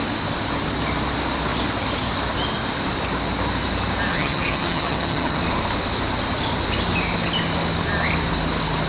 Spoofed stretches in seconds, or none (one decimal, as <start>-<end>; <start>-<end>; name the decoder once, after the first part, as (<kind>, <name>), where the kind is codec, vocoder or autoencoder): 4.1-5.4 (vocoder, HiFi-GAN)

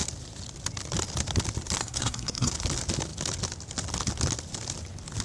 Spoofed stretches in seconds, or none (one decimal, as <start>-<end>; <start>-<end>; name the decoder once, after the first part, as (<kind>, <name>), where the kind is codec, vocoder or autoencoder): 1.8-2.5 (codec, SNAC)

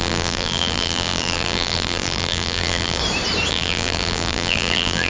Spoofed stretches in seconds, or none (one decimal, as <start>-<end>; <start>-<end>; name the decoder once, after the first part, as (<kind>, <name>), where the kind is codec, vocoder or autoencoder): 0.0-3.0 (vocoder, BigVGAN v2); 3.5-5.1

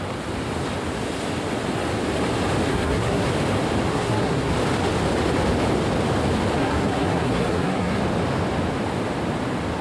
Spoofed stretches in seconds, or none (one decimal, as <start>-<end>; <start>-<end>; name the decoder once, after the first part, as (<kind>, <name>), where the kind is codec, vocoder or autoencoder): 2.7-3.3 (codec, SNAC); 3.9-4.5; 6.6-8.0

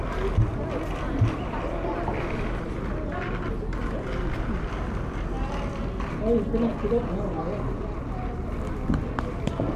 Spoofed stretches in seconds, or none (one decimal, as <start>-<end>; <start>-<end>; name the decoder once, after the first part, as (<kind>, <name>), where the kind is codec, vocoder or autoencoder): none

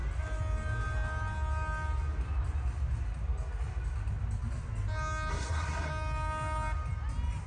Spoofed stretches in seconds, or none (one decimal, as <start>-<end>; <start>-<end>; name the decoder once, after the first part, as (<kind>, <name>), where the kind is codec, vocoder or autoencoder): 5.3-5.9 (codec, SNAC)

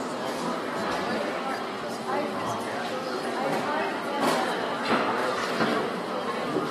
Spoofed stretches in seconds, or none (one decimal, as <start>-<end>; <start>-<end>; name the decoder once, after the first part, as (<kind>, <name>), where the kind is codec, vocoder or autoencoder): 0.8-3.7 (vocoder, BigVGAN v2); 5.2-5.8

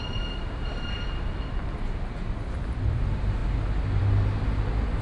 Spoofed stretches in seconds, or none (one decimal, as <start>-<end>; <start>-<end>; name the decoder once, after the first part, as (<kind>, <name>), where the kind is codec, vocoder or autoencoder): none